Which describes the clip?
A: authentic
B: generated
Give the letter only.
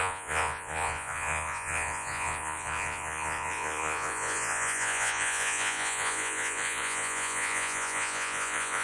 B